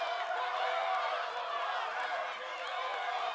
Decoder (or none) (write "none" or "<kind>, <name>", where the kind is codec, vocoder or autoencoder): none